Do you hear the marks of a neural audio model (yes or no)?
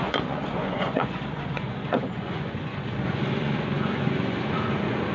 yes